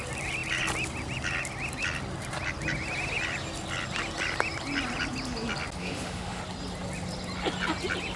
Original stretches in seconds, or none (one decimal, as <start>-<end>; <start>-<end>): 0.0-5.8; 6.4-8.2

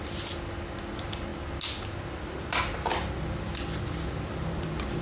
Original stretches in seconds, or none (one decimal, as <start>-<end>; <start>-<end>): 0.0-5.0

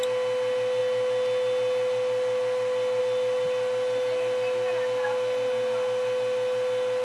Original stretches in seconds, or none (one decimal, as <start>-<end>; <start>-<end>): 0.0-7.0

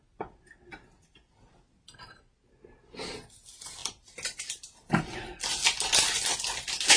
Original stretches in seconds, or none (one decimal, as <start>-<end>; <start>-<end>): 0.0-7.0

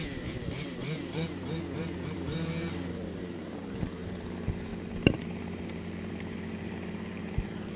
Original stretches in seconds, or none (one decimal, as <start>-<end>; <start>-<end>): none

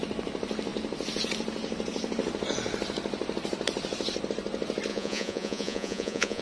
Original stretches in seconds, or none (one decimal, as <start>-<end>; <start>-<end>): 0.0-4.9